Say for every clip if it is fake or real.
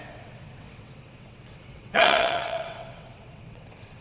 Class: fake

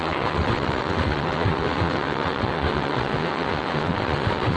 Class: fake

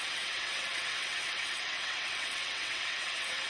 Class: fake